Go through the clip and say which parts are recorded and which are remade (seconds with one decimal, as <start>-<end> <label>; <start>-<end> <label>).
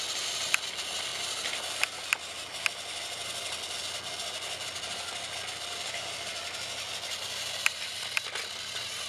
0.0-9.1 recorded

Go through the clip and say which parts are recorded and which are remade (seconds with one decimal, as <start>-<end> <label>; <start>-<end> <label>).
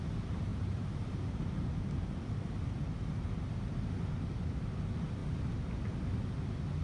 0.0-6.8 recorded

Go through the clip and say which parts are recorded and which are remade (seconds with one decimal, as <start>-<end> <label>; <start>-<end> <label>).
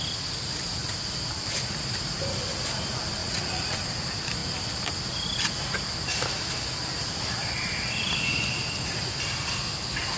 0.0-3.2 recorded; 3.2-3.8 remade; 3.8-10.2 recorded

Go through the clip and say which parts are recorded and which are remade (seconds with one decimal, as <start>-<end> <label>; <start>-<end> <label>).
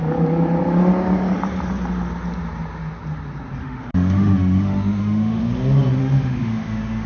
0.0-3.6 recorded; 3.6-5.4 remade; 5.4-6.0 recorded; 6.0-7.1 remade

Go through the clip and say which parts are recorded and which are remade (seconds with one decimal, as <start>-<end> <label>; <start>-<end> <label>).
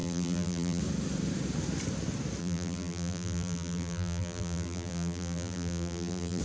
0.0-0.8 remade; 0.8-2.4 recorded; 2.4-6.4 remade